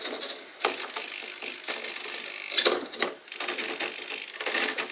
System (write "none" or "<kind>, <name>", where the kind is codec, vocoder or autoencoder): none